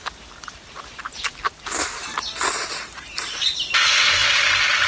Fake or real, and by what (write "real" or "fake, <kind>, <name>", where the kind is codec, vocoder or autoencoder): real